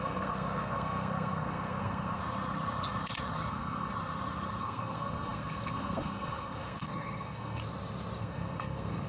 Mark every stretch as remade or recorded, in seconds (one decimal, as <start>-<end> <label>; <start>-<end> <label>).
0.0-2.2 remade; 2.2-3.5 recorded; 3.5-3.9 remade; 3.9-4.6 recorded; 4.6-7.6 remade; 7.6-8.2 recorded; 8.2-9.1 remade

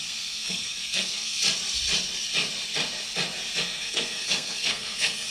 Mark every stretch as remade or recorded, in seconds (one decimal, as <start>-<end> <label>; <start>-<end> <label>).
0.0-1.4 remade; 1.4-3.6 recorded; 3.6-5.3 remade

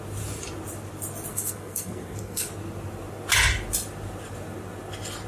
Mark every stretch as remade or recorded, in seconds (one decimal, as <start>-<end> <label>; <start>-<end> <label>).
0.0-1.3 recorded; 1.3-2.5 remade; 2.5-5.3 recorded

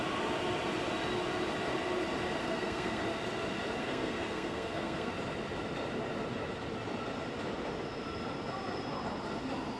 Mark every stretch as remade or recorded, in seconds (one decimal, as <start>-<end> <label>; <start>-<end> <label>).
0.0-2.4 recorded; 2.4-3.0 remade; 3.0-3.8 recorded; 3.8-5.1 remade; 5.1-9.8 recorded

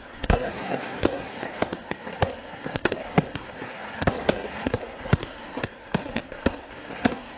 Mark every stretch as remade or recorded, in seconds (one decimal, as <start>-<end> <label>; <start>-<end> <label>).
0.0-7.4 remade

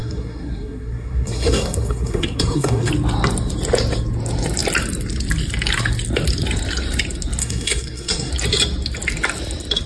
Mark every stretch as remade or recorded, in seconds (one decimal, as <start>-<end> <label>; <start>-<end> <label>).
0.0-2.9 remade; 2.9-7.4 recorded; 7.4-8.3 remade; 8.3-9.9 recorded

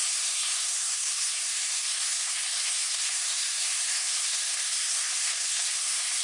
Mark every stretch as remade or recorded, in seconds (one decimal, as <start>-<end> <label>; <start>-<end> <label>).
0.0-6.2 remade

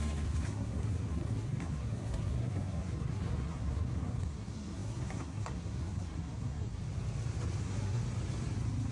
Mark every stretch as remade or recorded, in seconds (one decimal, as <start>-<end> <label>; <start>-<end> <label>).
0.0-6.8 remade; 6.8-7.6 recorded; 7.6-8.0 remade; 8.0-8.9 recorded